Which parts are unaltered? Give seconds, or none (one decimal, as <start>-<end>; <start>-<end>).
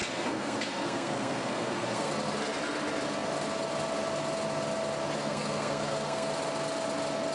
2.1-5.2; 6.3-7.3